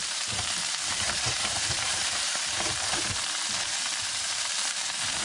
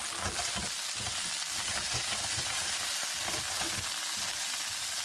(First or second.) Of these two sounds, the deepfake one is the first